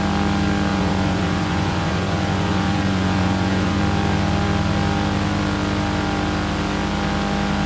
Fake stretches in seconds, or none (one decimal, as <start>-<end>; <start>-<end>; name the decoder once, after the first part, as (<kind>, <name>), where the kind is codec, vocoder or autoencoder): 0.7-3.8 (vocoder, Vocos)